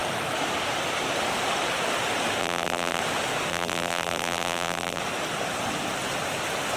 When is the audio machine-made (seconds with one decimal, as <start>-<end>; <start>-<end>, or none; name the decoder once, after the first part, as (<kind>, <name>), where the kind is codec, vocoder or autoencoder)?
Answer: 2.4-3.0 (vocoder, BigVGAN v2); 3.5-5.0